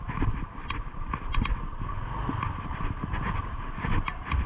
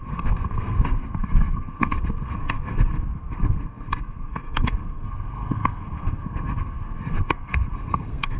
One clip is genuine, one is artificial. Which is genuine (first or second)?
first